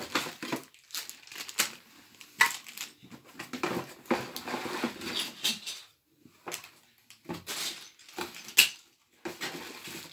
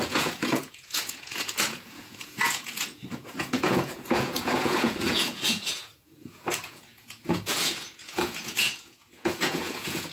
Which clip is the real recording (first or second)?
first